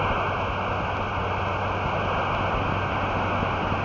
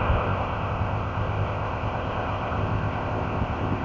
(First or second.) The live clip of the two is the first